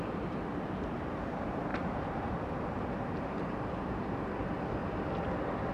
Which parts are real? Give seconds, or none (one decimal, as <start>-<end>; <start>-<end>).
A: 4.8-5.7

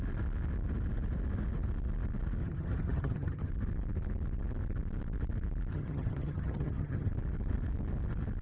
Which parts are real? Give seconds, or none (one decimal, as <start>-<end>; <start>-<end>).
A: 0.0-2.4; 3.5-5.7; 7.1-8.4

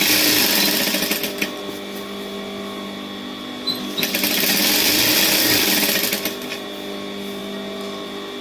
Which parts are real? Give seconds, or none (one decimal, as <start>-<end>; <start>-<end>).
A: 0.0-8.4

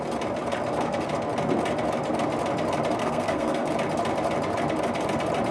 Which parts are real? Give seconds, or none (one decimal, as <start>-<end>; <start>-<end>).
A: 0.0-3.0; 3.7-5.5

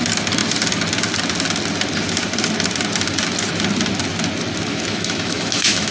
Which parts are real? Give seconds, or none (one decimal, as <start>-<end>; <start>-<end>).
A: 0.0-4.7

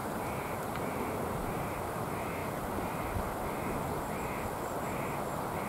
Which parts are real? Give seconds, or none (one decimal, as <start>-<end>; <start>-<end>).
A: 0.9-5.7

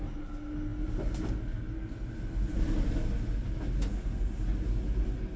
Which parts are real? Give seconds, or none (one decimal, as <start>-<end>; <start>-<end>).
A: 0.0-5.4

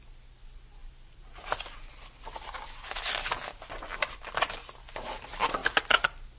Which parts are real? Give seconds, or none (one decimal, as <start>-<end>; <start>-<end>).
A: 0.0-0.8; 4.4-6.4